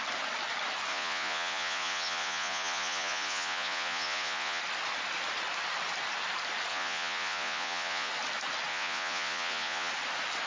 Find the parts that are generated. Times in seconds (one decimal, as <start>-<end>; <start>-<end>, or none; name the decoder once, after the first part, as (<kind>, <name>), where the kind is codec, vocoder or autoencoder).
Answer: 0.9-4.6 (vocoder, Vocos); 6.7-8.1; 8.7-9.9